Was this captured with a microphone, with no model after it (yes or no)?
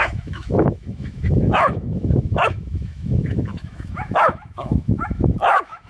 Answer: no